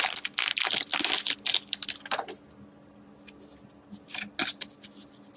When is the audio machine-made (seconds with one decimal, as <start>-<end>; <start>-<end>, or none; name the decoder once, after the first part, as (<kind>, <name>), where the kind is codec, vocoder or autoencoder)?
none